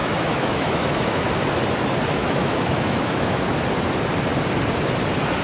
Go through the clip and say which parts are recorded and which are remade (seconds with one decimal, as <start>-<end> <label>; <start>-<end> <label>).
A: 0.0-1.3 remade; 1.3-2.2 recorded; 2.2-3.4 remade; 3.4-5.4 recorded